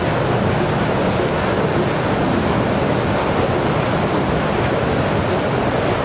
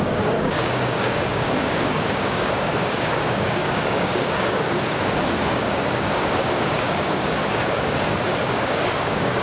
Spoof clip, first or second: second